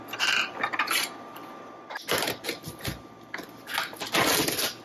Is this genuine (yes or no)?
yes